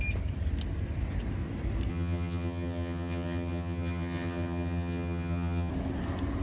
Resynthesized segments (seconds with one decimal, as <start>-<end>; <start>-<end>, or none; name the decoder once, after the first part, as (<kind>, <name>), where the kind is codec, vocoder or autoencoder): 1.9-5.7 (vocoder, HiFi-GAN)